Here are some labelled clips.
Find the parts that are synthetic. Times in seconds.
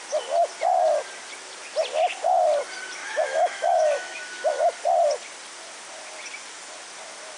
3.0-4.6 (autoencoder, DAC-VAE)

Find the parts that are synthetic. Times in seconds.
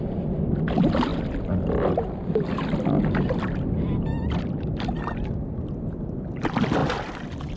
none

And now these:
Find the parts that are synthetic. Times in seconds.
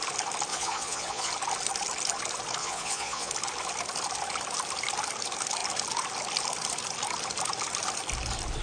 0.5-1.3 (vocoder, Vocos); 2.6-3.3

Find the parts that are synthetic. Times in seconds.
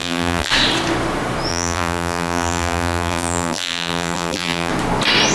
0.0-0.5 (vocoder, BigVGAN v2); 1.5-4.7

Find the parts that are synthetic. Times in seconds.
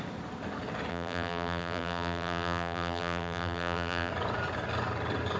0.9-4.1 (vocoder, BigVGAN v2)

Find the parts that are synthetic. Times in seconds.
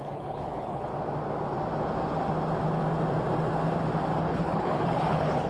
0.0-0.9 (codec, HILCodec); 4.2-5.5